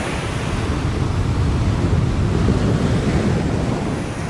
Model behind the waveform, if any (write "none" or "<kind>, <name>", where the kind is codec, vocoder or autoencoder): none